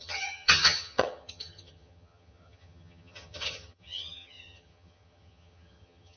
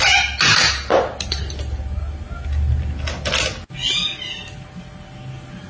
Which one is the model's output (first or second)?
first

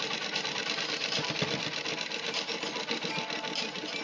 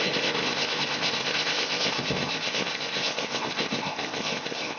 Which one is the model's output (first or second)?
second